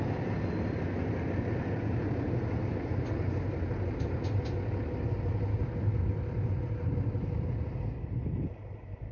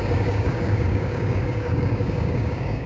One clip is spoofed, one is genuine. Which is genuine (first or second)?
first